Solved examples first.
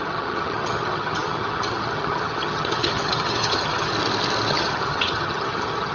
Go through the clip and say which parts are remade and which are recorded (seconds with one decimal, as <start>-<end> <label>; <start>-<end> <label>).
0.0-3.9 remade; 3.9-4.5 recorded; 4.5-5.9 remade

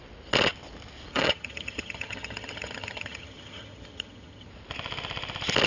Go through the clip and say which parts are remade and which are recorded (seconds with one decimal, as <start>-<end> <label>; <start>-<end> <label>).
0.0-1.1 recorded; 1.1-4.5 remade; 4.5-5.7 recorded

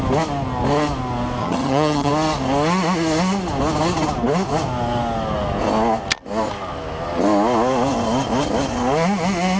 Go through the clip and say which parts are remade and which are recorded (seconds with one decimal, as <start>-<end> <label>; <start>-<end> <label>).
0.0-1.4 recorded; 1.4-2.1 remade; 2.1-9.6 recorded

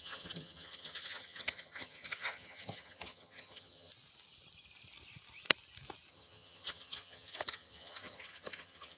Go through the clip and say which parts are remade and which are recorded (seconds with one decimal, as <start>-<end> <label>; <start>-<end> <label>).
0.0-3.9 remade; 3.9-6.1 recorded; 6.1-9.0 remade

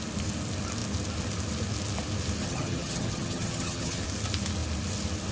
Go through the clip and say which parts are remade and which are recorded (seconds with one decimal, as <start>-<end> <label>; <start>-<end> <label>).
0.0-2.4 recorded; 2.4-4.0 remade; 4.0-5.3 recorded